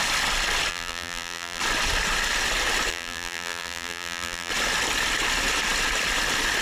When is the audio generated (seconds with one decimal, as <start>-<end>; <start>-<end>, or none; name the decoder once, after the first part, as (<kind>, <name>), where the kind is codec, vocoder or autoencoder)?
0.7-1.6 (vocoder, BigVGAN v2); 2.9-4.5